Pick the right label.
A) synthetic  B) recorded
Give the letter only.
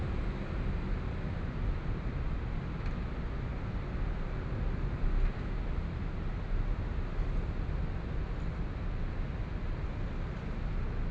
B